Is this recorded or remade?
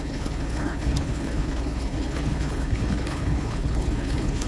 remade